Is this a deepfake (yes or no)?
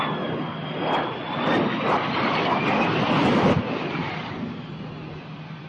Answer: no